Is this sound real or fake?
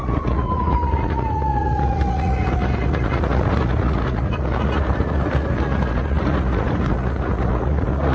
fake